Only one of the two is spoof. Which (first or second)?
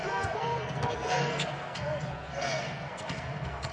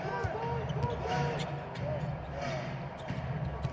first